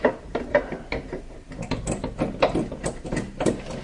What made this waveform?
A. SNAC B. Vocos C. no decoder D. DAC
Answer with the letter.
C